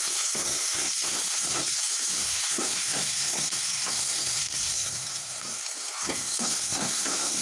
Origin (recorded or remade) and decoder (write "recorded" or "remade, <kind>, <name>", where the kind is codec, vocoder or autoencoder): remade, codec, SNAC